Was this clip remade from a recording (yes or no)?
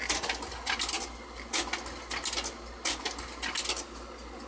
no